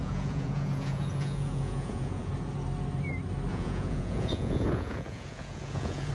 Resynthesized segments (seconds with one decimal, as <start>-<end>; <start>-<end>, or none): 0.0-2.3; 3.5-6.1